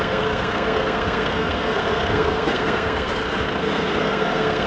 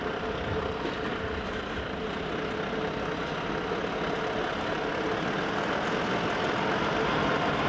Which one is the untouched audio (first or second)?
second